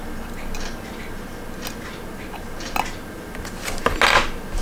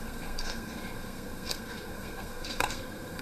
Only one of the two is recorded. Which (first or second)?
first